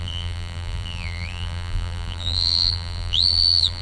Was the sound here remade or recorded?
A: remade